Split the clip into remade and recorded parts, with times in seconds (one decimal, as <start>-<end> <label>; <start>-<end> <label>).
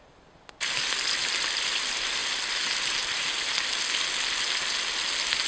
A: 0.0-5.5 recorded